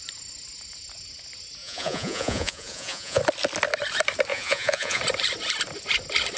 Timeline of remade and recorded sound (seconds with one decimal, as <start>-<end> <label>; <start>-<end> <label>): 0.0-1.6 recorded; 1.6-3.2 remade; 3.2-4.3 recorded; 4.3-5.0 remade; 5.0-6.4 recorded